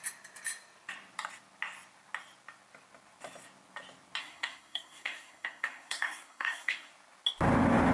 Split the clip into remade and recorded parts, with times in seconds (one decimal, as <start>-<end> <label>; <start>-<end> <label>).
0.0-4.2 recorded; 4.2-6.9 remade; 6.9-7.9 recorded